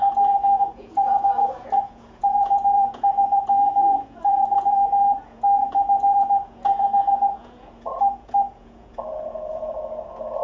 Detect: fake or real fake